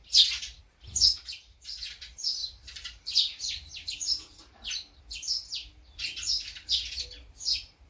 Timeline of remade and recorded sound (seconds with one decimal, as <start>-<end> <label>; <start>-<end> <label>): 0.0-0.6 remade; 0.6-1.1 recorded; 1.1-1.9 remade; 1.9-2.4 recorded; 2.4-5.0 remade; 5.0-7.9 recorded